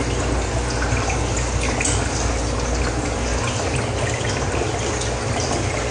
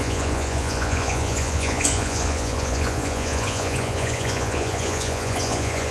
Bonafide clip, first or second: first